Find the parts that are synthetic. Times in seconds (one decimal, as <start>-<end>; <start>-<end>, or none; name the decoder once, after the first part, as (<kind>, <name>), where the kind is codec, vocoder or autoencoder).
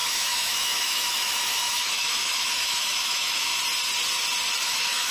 0.0-3.5 (autoencoder, DAC-VAE); 4.6-5.1